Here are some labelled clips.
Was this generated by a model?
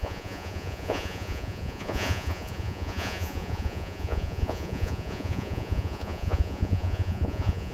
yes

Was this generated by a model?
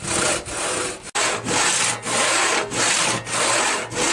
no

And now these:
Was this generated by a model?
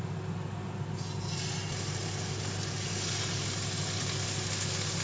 no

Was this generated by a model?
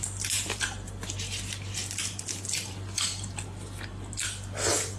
no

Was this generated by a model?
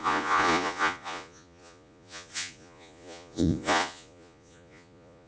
yes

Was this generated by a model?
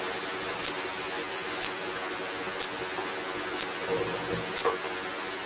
no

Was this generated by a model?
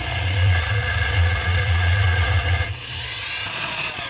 yes